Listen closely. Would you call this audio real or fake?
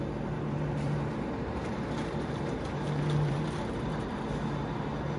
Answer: fake